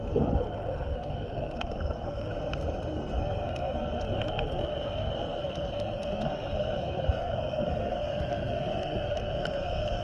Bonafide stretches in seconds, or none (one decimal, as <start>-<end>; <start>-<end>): 2.3-2.9